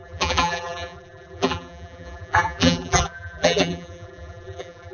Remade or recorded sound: remade